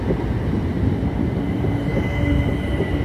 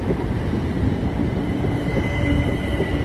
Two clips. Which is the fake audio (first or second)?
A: second